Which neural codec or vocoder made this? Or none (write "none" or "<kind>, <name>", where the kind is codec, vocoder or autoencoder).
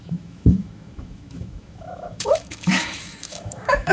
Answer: autoencoder, DAC-VAE